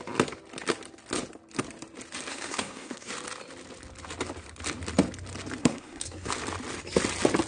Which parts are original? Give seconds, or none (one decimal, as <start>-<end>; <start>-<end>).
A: 0.0-2.3; 3.1-5.6; 6.3-7.5